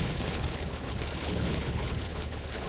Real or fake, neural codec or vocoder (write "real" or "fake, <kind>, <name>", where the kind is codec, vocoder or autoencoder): fake, codec, HILCodec